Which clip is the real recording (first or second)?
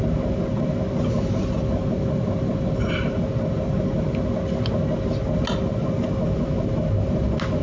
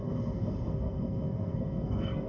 first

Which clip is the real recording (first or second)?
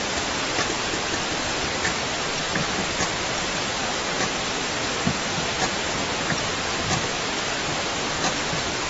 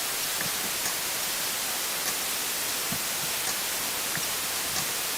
second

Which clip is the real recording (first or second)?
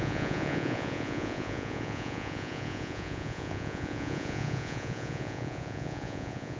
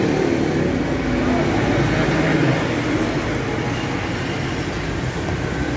second